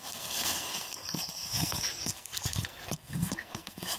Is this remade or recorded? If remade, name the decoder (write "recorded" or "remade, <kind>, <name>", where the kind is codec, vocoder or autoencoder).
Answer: remade, codec, SNAC